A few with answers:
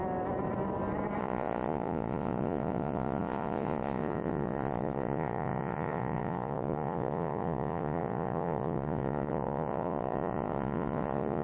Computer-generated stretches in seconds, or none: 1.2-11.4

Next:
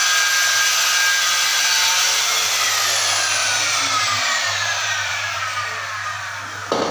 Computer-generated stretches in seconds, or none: 1.5-2.2; 3.4-5.4

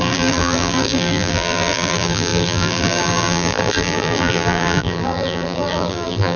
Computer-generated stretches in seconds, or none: 0.0-6.4

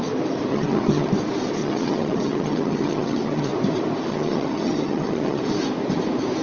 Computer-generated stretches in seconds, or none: 0.5-1.1; 1.6-3.5; 4.1-5.4

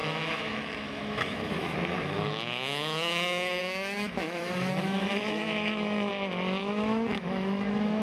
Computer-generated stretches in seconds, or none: 0.0-6.1; 6.6-8.0